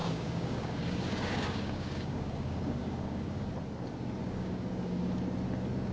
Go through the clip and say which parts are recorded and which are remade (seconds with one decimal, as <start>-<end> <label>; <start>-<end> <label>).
0.0-3.5 remade; 3.5-4.2 recorded; 4.2-5.1 remade; 5.1-5.9 recorded